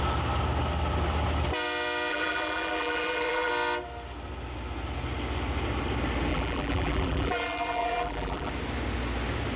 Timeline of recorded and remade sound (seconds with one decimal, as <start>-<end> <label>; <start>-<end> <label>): 0.0-2.1 recorded; 2.1-3.5 remade; 3.5-6.3 recorded; 6.3-8.5 remade; 8.5-9.6 recorded